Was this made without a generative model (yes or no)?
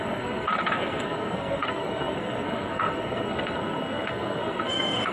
no